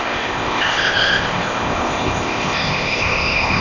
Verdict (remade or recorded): remade